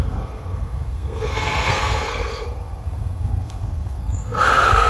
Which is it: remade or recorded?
remade